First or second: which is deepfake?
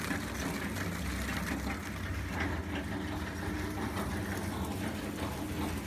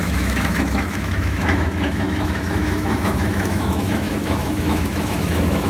second